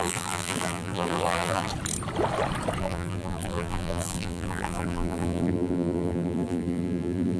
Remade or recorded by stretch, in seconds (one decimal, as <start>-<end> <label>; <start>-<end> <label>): 0.0-1.7 remade; 1.7-2.8 recorded; 2.8-7.4 remade